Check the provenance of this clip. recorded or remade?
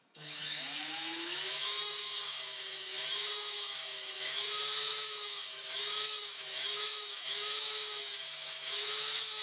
remade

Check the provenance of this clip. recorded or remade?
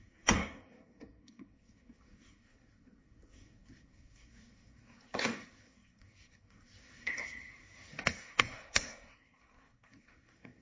remade